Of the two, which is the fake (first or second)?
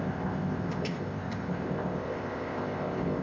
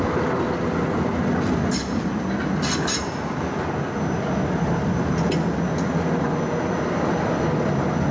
first